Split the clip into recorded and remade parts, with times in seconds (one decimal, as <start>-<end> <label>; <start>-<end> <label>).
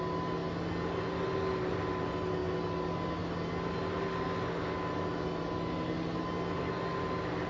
0.0-7.5 recorded